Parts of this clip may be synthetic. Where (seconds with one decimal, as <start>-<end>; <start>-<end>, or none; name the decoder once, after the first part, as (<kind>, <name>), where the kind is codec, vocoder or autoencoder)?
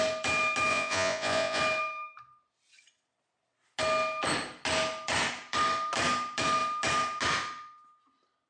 0.7-1.6 (vocoder, Vocos)